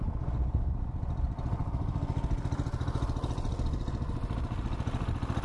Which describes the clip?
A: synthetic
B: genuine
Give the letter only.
B